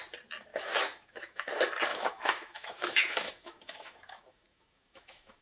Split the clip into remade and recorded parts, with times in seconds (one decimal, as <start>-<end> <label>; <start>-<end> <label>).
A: 0.0-0.5 recorded; 0.5-1.5 remade; 1.5-1.9 recorded; 1.9-5.4 remade